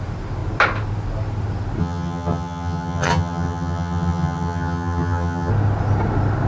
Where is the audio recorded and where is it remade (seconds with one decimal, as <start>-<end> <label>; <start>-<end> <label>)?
0.0-1.8 recorded; 1.8-5.5 remade; 5.5-6.5 recorded